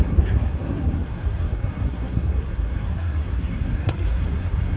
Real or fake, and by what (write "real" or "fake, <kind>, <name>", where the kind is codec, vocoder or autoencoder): fake, codec, SNAC